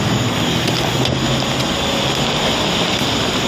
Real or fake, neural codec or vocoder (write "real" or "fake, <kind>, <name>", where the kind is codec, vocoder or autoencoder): real